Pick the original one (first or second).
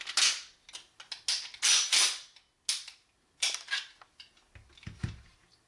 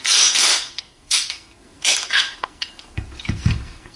first